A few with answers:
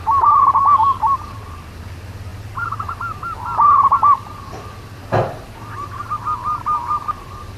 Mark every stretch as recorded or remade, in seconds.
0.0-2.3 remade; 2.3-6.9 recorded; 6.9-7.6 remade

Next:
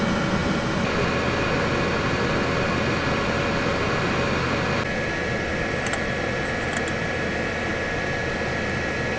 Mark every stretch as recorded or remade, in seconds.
0.0-5.5 recorded; 5.5-7.7 remade; 7.7-8.2 recorded; 8.2-9.2 remade

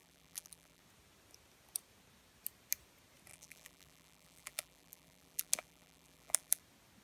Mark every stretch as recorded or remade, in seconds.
0.0-0.8 remade; 0.8-3.3 recorded; 3.3-6.6 remade; 6.6-7.0 recorded

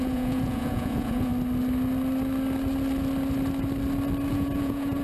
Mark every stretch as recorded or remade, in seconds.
0.0-1.3 remade; 1.3-4.3 recorded; 4.3-5.0 remade

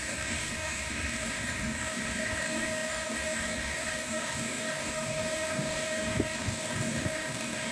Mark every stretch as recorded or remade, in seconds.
0.0-7.7 remade

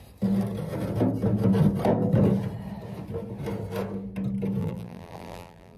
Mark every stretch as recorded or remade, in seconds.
0.0-4.6 recorded; 4.6-5.8 remade